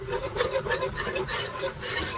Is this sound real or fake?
real